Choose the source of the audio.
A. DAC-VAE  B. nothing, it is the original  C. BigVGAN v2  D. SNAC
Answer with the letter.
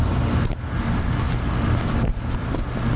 B